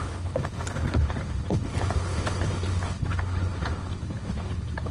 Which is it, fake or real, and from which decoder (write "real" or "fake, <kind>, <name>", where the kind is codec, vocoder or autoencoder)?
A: fake, codec, HILCodec